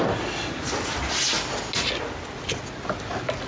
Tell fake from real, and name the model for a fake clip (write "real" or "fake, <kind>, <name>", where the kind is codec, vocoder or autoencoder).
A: real